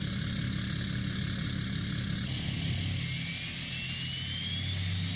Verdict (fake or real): real